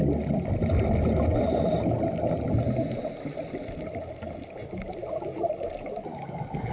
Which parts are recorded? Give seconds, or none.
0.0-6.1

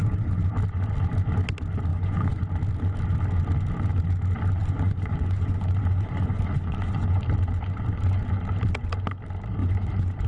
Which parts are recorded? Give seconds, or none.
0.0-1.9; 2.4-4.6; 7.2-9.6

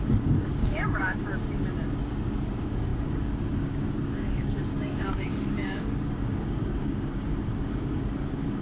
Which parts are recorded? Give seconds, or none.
1.3-2.5